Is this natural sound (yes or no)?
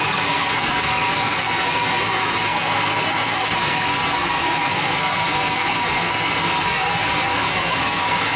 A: no